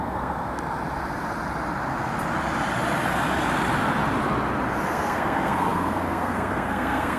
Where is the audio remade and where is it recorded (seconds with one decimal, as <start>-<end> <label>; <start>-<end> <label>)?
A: 0.0-0.5 remade; 0.5-4.8 recorded; 4.8-7.2 remade